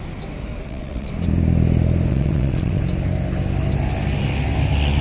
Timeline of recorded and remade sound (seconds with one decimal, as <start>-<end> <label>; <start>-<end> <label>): 0.0-0.5 recorded; 0.5-1.1 remade; 1.1-2.1 recorded; 2.1-2.8 remade; 2.8-5.0 recorded